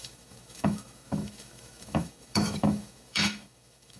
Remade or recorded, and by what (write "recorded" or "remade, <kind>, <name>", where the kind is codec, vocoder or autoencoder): remade, autoencoder, DAC-VAE